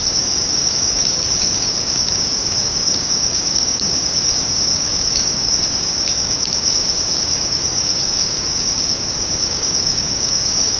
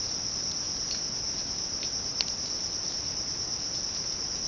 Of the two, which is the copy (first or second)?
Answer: first